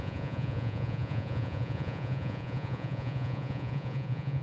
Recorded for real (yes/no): no